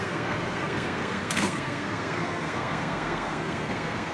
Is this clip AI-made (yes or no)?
yes